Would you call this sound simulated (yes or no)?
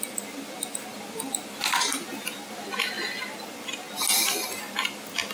no